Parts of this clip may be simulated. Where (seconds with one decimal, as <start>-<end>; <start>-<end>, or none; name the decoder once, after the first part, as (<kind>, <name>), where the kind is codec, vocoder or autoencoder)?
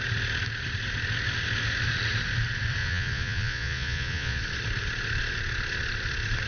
2.8-4.4 (vocoder, Vocos)